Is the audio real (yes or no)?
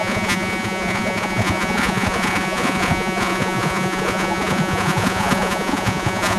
no